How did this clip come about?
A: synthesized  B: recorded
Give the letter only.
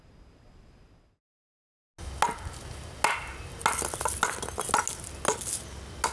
B